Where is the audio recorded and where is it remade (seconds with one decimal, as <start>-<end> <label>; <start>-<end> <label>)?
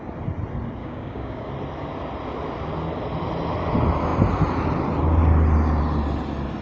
0.0-0.8 recorded; 0.8-1.5 remade; 1.5-6.6 recorded